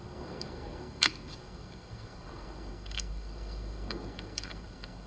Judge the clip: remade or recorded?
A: remade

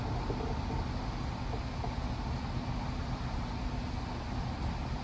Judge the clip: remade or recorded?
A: recorded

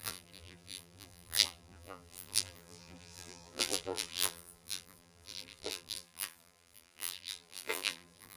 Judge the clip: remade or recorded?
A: remade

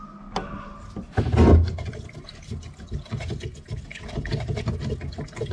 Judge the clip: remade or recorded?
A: recorded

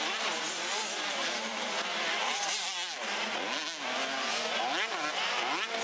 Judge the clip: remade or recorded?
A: recorded